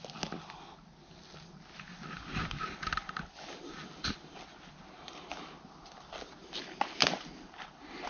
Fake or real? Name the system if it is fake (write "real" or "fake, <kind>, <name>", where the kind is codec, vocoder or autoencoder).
real